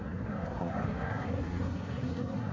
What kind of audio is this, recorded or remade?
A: remade